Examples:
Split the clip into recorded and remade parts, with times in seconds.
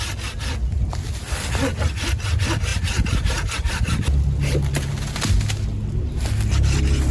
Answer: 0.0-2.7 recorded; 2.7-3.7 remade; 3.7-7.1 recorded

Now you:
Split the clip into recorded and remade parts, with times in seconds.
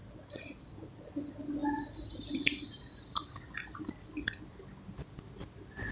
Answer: 0.0-1.1 remade; 1.1-1.6 recorded; 1.6-2.3 remade; 2.3-2.9 recorded; 2.9-4.4 remade; 4.4-5.9 recorded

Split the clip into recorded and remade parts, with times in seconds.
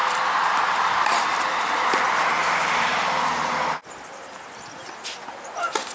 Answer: 0.0-2.9 remade; 2.9-5.9 recorded